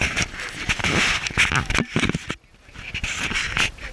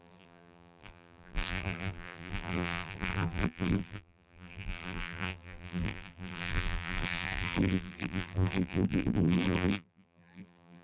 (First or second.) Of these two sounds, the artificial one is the second